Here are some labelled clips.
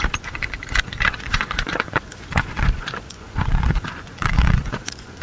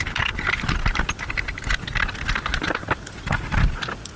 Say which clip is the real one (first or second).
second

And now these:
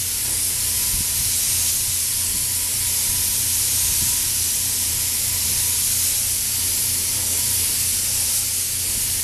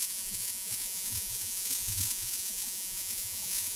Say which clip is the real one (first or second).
first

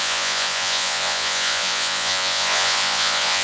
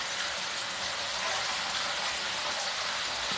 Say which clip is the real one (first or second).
second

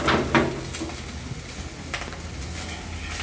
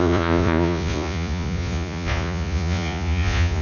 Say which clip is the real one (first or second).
first